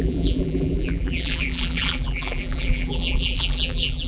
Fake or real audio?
fake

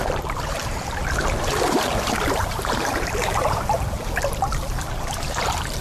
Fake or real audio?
fake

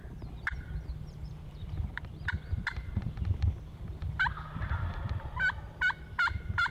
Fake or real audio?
fake